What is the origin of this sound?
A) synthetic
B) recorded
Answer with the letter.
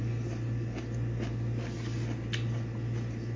B